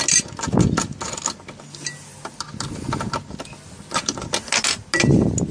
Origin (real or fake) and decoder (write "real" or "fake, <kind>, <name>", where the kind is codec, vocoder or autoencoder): real